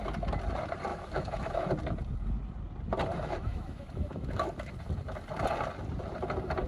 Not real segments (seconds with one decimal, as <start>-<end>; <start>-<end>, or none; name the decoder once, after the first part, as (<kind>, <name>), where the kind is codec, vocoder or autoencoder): 0.9-1.7 (autoencoder, DAC-VAE); 3.1-4.7